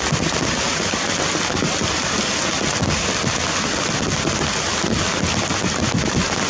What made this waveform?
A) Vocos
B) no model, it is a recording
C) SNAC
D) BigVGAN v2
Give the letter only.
B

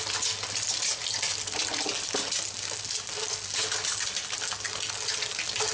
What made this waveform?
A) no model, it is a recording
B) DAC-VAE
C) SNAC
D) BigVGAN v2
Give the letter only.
A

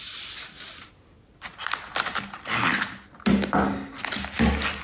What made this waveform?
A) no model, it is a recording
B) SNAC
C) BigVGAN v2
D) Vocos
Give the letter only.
A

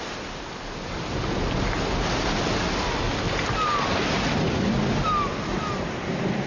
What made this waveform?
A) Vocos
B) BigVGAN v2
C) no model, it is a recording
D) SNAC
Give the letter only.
C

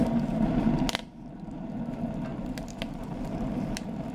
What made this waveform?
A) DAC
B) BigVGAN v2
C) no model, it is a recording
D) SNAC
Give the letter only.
B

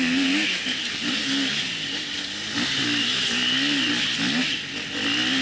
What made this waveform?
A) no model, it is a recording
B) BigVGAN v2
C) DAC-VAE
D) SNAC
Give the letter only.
A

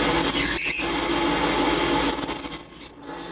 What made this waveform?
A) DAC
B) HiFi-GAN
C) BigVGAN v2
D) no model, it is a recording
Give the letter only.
D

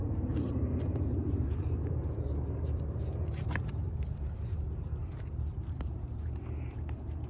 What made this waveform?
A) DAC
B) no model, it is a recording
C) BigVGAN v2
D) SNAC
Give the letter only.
C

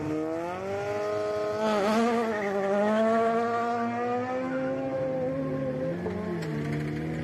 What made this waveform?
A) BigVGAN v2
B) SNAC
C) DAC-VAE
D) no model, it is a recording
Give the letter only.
D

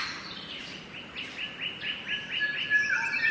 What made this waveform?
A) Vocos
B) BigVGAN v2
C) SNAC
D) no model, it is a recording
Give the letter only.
B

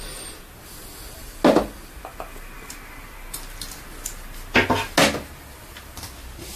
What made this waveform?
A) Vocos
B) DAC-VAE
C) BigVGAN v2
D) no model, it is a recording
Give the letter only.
D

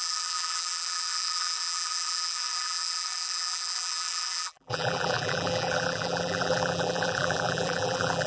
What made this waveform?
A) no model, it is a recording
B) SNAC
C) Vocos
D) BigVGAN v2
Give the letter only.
D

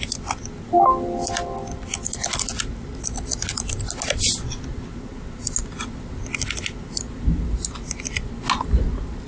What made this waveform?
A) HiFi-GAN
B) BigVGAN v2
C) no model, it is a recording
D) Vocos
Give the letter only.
C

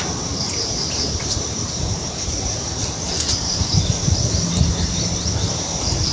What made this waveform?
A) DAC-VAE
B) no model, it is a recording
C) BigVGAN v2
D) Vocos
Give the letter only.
C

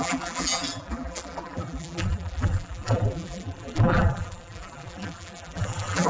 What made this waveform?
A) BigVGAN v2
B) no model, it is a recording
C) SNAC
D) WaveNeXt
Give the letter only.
A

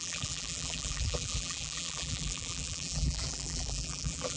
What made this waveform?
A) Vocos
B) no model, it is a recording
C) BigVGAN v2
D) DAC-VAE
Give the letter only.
C